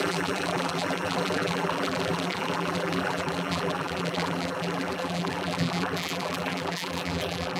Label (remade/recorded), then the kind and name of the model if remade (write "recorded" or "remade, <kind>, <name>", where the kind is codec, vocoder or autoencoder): remade, vocoder, BigVGAN v2